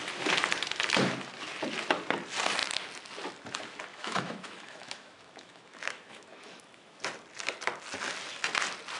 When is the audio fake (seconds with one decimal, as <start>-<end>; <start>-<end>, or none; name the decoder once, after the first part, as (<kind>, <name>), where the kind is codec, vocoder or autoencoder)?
3.9-7.0 (autoencoder, DAC-VAE)